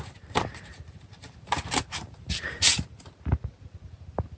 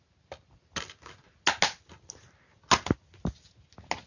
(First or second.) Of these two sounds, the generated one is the first